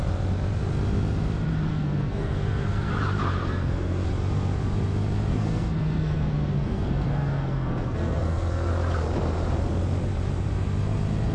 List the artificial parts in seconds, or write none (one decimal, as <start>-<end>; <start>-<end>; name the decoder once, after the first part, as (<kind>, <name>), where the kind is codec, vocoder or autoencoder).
1.7-2.9 (codec, SNAC); 3.4-4.1; 5.3-8.7